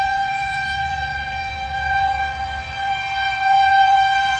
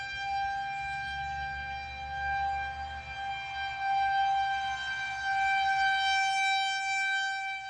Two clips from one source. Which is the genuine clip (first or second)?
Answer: second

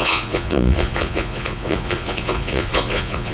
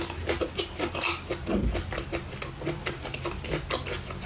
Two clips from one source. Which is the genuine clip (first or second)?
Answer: second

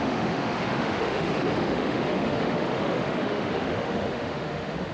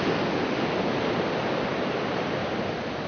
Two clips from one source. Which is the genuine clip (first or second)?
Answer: second